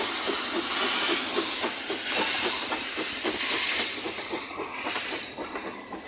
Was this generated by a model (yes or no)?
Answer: no